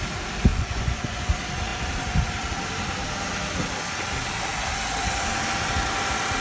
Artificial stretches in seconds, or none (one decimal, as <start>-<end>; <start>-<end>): 0.5-1.2